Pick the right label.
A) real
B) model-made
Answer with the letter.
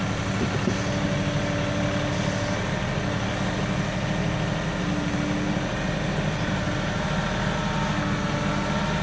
A